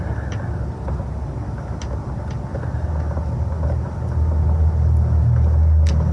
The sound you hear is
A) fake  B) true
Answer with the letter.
B